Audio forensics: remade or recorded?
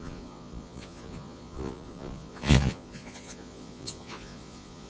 remade